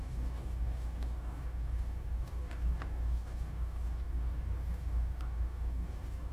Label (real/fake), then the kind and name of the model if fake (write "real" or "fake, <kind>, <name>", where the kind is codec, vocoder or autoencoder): fake, codec, DAC